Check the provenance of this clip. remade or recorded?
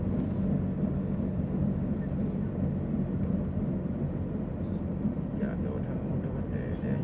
remade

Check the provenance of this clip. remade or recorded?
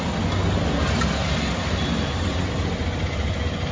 recorded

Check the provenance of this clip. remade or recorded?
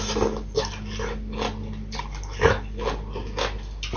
recorded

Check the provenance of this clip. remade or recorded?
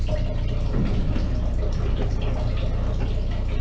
recorded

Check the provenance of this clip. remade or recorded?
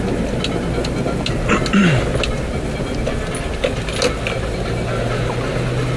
recorded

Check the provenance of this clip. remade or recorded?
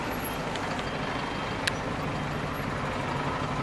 recorded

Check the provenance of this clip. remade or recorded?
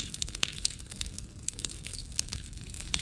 remade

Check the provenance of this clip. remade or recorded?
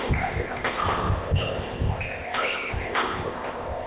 remade